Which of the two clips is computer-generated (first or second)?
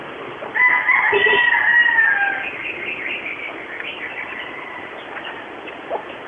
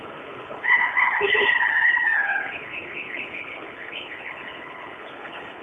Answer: second